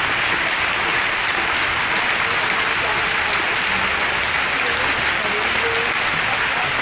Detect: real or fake real